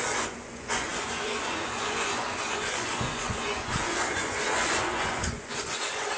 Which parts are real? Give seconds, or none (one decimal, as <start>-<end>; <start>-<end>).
none